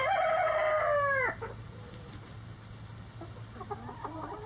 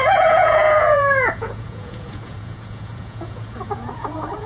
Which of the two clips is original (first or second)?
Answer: first